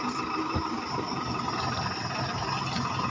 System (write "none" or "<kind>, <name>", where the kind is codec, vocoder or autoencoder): none